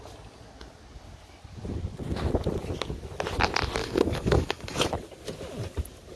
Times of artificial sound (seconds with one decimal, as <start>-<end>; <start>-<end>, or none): 3.8-4.9